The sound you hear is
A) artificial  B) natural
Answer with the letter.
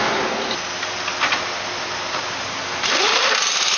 B